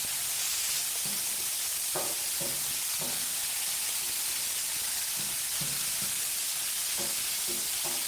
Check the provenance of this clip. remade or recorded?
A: recorded